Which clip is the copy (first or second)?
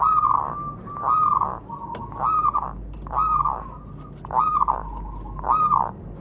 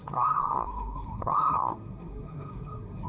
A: second